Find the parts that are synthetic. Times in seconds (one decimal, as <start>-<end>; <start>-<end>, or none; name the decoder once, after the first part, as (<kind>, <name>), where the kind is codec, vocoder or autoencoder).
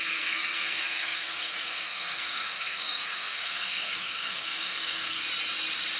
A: 0.0-5.2 (codec, SNAC)